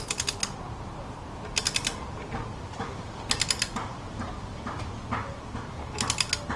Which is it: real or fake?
real